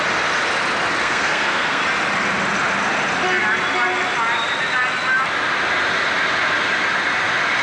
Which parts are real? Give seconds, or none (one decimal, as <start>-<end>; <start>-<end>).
0.0-1.0; 1.8-7.6